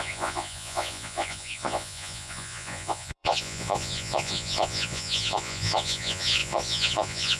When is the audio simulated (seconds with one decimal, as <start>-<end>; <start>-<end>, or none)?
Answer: 0.0-7.4